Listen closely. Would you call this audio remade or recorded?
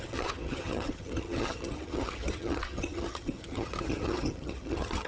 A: remade